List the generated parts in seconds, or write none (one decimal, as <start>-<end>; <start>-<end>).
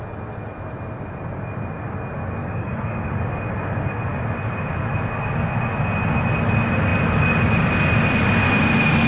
2.4-3.1